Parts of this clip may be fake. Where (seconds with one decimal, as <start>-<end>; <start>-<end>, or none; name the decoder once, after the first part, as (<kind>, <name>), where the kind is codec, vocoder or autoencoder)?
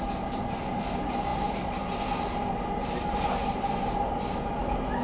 none